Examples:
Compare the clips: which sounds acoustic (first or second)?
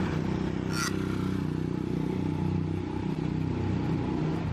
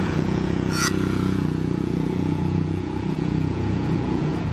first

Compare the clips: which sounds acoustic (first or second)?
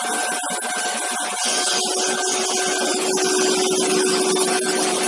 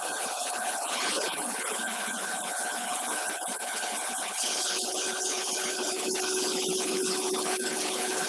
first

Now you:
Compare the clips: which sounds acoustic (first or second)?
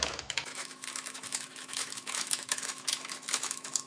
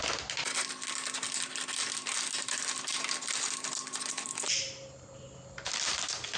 second